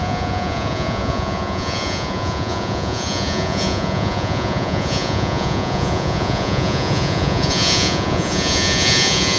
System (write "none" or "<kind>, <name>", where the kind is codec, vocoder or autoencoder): vocoder, Vocos